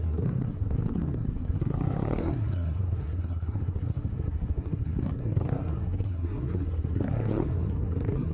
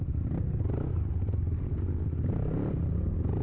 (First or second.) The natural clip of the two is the second